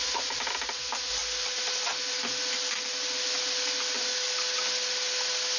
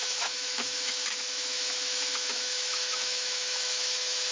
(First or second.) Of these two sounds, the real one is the first